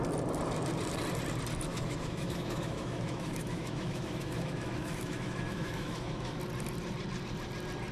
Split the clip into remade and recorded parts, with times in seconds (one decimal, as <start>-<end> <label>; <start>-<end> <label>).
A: 0.0-1.7 recorded; 1.7-6.4 remade; 6.4-7.9 recorded